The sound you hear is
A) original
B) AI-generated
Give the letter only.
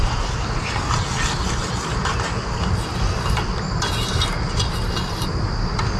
A